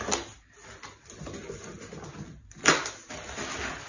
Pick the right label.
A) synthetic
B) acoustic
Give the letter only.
B